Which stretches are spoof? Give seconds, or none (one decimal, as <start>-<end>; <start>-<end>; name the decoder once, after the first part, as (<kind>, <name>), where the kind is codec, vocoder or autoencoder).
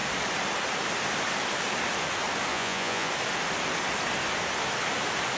2.5-3.1 (vocoder, Vocos)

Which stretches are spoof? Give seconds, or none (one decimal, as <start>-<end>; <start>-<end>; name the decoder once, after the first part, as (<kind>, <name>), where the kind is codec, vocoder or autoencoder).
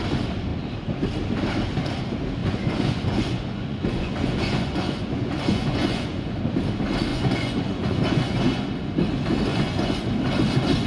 2.4-6.4 (vocoder, Vocos); 7.1-8.7; 9.5-10.0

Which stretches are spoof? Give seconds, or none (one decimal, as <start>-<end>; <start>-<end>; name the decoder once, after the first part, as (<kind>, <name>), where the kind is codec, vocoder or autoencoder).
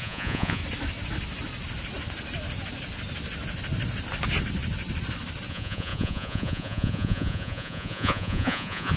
0.0-0.6 (vocoder, Vocos); 5.5-9.0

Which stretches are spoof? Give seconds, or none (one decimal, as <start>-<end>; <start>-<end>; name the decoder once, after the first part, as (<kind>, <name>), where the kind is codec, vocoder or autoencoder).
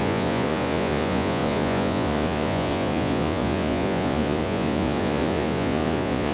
0.0-6.3 (vocoder, Vocos)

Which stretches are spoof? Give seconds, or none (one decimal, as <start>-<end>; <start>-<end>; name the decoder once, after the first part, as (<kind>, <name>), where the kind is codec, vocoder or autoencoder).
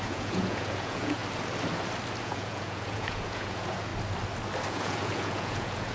0.0-1.2 (vocoder, Vocos); 2.2-3.9; 4.7-5.9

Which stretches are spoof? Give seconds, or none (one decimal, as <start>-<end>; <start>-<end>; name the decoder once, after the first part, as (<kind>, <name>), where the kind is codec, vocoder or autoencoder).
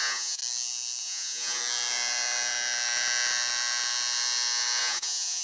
0.0-0.4 (vocoder, Vocos); 1.0-1.6; 4.8-5.4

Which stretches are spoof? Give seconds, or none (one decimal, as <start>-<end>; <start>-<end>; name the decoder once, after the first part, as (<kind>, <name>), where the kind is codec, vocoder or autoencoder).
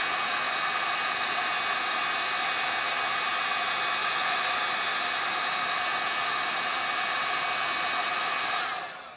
4.0-4.6 (vocoder, Vocos)